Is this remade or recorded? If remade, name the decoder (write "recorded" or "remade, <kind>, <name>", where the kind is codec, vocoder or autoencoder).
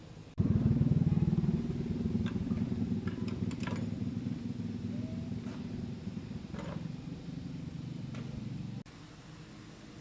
recorded